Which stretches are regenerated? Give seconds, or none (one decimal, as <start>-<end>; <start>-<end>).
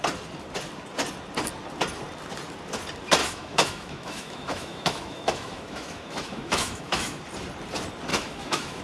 3.2-7.2; 8.1-8.8